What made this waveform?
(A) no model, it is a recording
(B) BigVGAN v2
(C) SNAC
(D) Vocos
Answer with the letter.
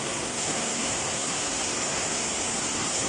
C